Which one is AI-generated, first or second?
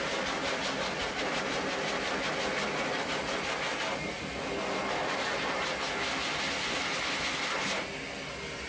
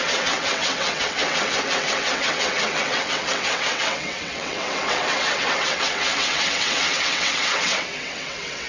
second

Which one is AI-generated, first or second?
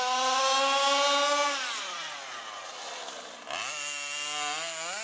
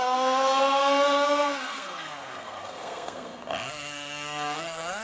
second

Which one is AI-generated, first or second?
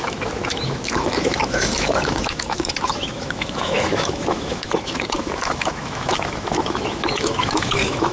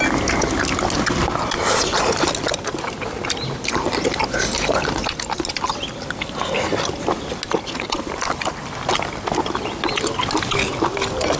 first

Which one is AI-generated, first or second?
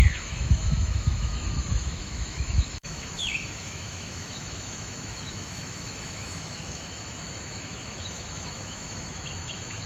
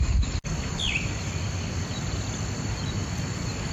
first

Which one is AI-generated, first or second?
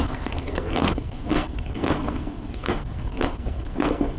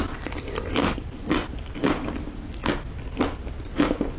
first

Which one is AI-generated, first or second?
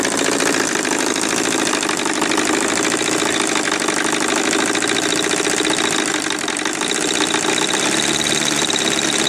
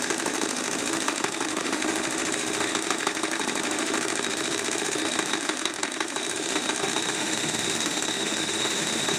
second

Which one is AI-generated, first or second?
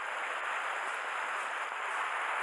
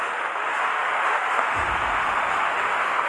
second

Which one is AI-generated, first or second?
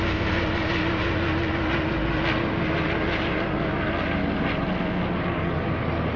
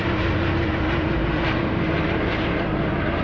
second